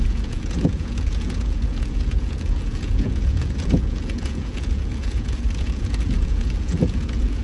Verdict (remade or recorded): remade